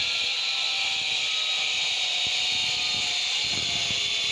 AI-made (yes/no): no